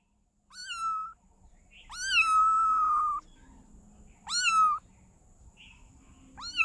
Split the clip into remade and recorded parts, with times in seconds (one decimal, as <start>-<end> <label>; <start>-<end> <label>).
0.0-6.6 recorded